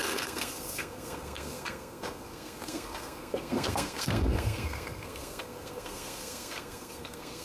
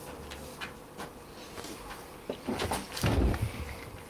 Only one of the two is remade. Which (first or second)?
first